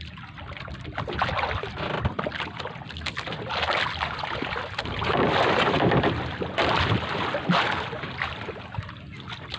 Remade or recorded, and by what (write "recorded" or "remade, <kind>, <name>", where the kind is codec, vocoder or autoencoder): recorded